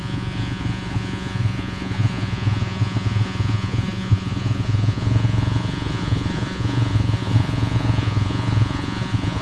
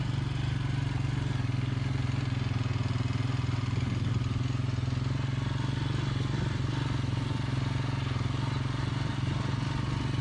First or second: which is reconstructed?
first